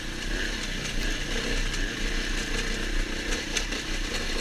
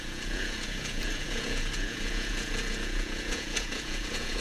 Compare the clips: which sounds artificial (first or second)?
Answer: second